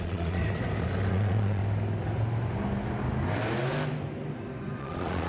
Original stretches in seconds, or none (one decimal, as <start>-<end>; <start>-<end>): 0.4-1.1; 1.6-4.8